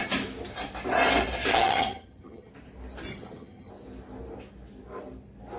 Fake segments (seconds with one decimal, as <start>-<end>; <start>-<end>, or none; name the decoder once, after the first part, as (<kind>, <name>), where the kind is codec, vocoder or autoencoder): 1.5-2.5 (vocoder, HiFi-GAN); 3.1-3.7